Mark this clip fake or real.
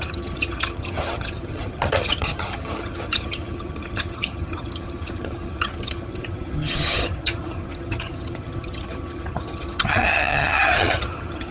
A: fake